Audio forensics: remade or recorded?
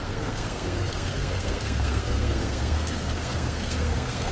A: remade